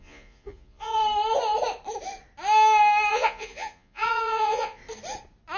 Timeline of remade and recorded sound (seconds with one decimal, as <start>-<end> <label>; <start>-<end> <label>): 0.0-1.0 remade; 1.0-3.1 recorded; 3.1-4.8 remade; 4.8-5.6 recorded